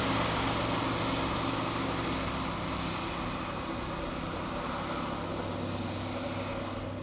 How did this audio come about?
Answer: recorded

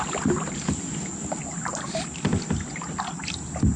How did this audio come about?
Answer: recorded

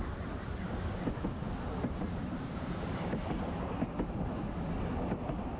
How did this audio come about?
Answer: recorded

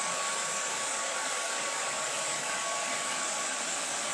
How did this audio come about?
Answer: remade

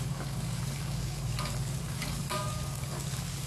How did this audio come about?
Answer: remade